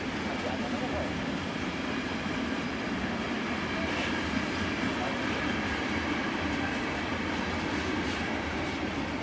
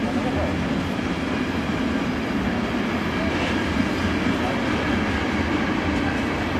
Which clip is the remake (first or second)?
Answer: first